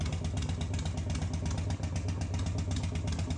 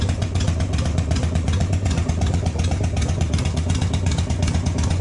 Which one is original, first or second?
first